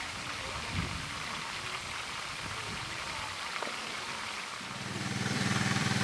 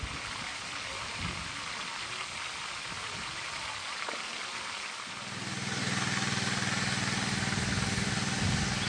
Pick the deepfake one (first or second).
first